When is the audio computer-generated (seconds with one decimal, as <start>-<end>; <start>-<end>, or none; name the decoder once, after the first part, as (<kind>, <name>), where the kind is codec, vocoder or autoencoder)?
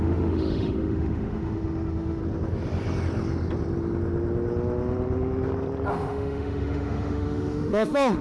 0.0-2.2 (autoencoder, DAC-VAE); 5.9-8.2